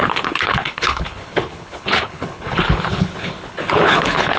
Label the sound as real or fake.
fake